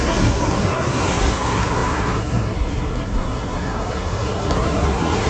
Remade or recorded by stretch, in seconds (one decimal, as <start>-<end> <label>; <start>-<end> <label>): 0.0-5.3 remade